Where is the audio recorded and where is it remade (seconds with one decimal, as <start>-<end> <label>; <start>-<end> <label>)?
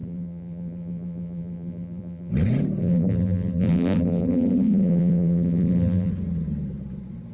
0.0-2.3 remade; 2.3-2.8 recorded; 2.8-6.1 remade; 6.1-7.3 recorded